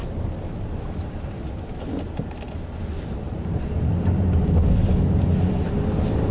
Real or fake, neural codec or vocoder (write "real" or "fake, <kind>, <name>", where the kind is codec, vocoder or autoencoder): real